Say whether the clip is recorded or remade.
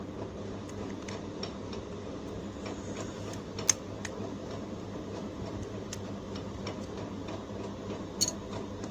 recorded